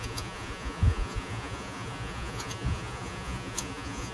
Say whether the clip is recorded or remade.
remade